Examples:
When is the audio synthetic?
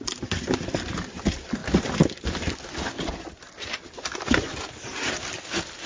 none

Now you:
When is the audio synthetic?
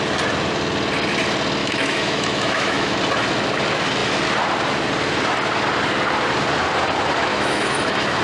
1.6-3.0; 7.3-8.2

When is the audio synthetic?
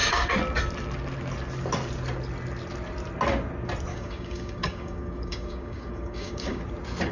3.9-6.6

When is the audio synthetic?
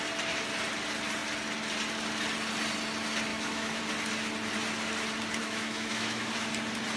3.3-3.8; 5.4-6.3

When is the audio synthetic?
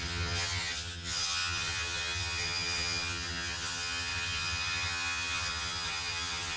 0.0-6.6